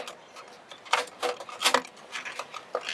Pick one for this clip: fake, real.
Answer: real